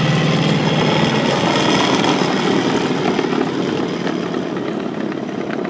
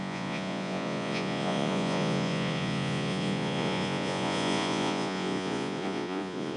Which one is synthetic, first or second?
second